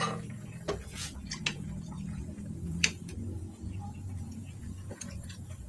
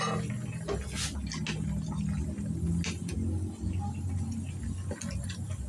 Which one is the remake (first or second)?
first